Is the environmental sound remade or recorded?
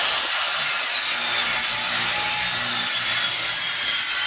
recorded